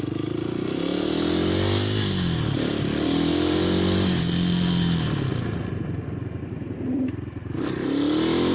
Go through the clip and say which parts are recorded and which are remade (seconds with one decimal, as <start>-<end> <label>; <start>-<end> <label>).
0.0-8.5 recorded